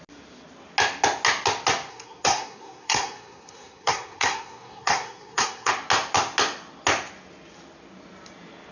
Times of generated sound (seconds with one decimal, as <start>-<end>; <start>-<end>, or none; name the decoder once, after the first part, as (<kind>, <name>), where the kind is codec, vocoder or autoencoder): 1.9-5.7 (codec, SNAC)